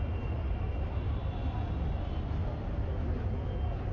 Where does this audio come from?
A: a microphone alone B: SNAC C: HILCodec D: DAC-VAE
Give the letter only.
A